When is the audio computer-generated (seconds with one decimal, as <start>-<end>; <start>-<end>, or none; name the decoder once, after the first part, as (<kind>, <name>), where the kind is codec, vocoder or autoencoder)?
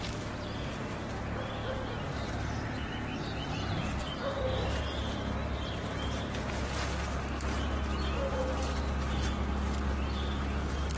none